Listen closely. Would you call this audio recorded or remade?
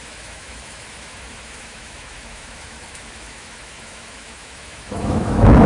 remade